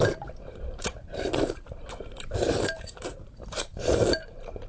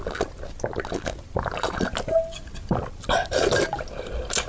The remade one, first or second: first